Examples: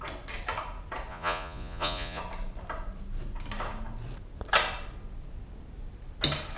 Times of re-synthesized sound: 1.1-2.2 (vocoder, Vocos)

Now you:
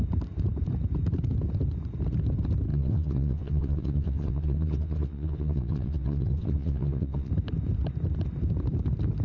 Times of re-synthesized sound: 2.7-7.3 (vocoder, WaveNeXt)

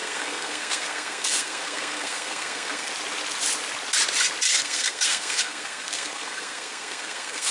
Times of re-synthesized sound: 0.0-2.9 (codec, SNAC); 4.5-7.5

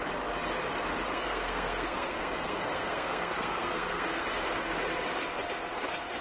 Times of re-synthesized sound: 1.1-4.2 (codec, SNAC)